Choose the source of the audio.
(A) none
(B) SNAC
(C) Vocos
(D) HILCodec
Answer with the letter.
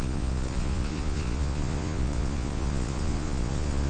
C